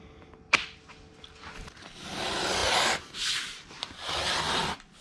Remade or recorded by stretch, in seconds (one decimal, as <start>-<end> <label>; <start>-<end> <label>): 0.0-5.0 recorded